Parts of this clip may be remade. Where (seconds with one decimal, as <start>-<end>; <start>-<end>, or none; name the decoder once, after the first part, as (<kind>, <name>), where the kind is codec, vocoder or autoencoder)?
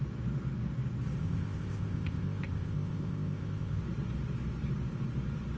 1.2-3.8 (codec, ZipCodec)